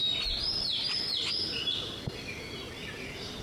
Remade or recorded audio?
recorded